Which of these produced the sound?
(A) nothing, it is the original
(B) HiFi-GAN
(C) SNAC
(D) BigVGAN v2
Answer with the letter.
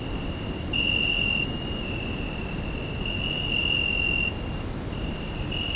A